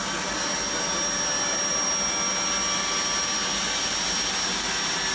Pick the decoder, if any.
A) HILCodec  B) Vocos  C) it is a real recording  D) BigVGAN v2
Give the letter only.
C